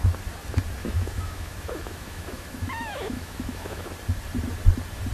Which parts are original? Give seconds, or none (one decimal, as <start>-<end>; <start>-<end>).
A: 0.0-0.8; 3.9-5.1